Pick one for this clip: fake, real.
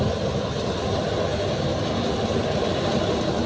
real